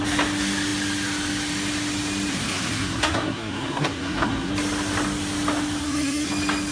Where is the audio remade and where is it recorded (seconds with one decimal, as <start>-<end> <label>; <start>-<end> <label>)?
0.0-2.3 recorded; 2.3-4.5 remade; 4.5-5.8 recorded; 5.8-6.3 remade; 6.3-6.7 recorded